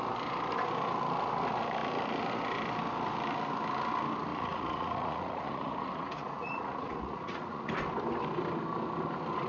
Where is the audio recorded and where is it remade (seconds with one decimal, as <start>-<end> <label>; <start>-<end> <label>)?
0.0-4.3 recorded; 4.3-7.7 remade; 7.7-9.5 recorded